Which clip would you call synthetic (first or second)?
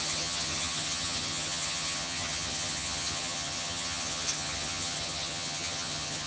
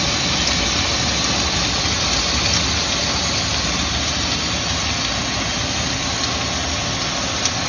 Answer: first